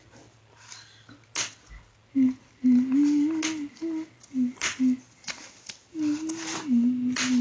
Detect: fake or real real